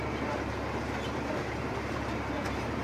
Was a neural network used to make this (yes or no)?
yes